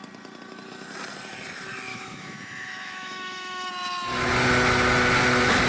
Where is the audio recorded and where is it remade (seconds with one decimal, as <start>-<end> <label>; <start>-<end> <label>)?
0.0-1.9 recorded; 1.9-3.7 remade; 3.7-5.7 recorded